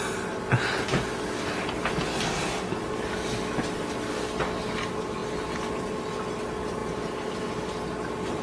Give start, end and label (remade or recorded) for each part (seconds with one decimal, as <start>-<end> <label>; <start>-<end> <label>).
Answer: 0.0-8.4 recorded